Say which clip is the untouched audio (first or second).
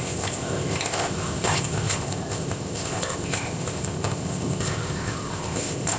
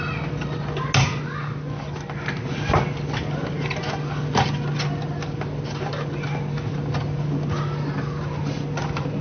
second